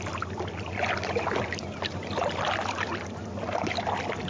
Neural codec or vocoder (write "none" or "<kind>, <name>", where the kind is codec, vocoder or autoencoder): none